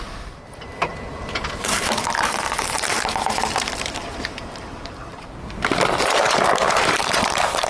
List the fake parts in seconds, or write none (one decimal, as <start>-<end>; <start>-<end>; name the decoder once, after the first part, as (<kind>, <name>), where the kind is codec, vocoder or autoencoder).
0.0-0.9 (vocoder, BigVGAN v2); 1.5-5.0; 6.0-7.7